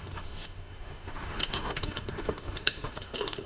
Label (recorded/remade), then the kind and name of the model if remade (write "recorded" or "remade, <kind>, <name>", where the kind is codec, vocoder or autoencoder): remade, autoencoder, DAC-VAE